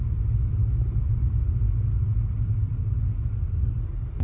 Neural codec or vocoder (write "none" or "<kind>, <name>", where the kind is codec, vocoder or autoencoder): none